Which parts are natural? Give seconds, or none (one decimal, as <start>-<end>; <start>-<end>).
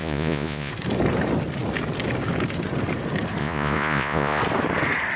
0.7-3.4; 4.4-5.2